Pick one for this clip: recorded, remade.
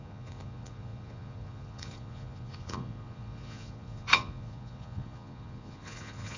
remade